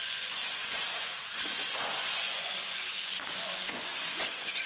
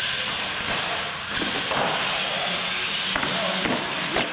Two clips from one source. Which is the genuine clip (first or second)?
second